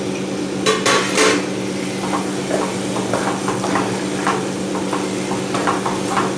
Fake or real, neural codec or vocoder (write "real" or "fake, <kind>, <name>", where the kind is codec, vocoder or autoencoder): fake, vocoder, BigVGAN v2